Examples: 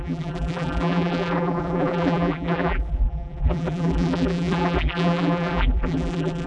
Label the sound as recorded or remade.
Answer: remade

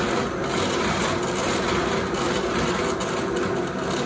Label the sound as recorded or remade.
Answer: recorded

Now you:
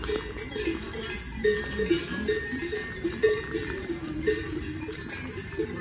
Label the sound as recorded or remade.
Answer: remade